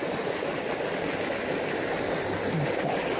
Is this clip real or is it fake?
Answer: real